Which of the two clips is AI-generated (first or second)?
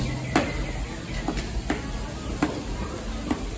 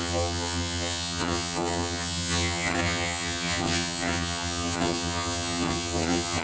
second